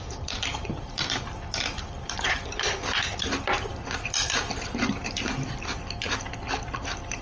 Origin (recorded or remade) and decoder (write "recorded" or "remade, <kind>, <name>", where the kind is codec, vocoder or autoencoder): remade, vocoder, BigVGAN v2